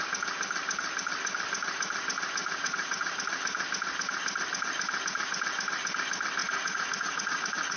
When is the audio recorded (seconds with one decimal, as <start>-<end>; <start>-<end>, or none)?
0.0-2.4; 3.2-6.4